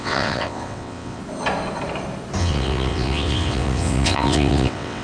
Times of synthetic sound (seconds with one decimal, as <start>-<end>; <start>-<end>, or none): 0.0-1.2; 2.4-5.0